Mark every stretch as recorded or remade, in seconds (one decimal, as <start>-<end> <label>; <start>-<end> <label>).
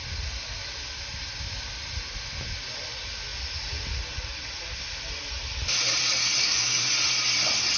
0.0-6.4 recorded; 6.4-6.9 remade; 6.9-7.8 recorded